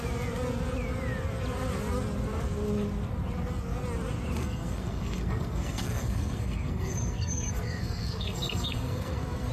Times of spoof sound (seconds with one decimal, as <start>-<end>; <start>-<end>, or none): 4.4-9.5